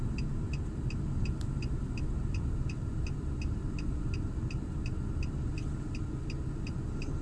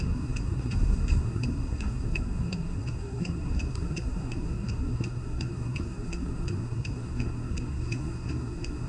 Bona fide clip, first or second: first